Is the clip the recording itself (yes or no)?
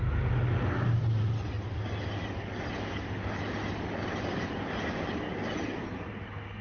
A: yes